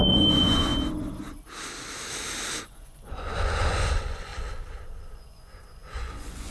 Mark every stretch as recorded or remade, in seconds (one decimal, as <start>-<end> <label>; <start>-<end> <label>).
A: 0.0-0.7 remade; 0.7-2.6 recorded; 2.6-4.3 remade; 4.3-5.2 recorded; 5.2-6.5 remade